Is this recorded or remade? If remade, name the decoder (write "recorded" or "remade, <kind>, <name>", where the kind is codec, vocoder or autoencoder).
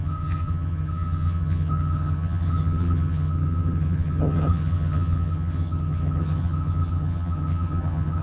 remade, vocoder, HiFi-GAN